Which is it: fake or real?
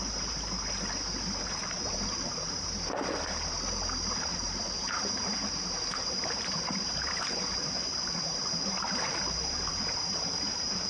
fake